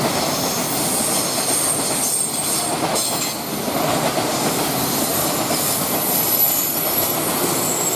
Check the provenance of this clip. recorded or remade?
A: recorded